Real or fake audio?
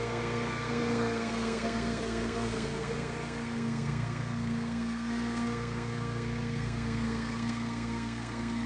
fake